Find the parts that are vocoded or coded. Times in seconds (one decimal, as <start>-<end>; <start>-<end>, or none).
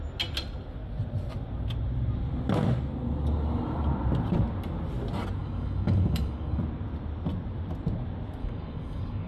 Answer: 5.4-6.6; 8.4-9.3